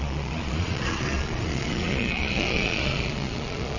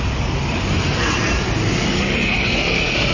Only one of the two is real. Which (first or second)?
second